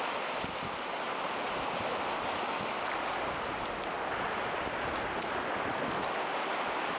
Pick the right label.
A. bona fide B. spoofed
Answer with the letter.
A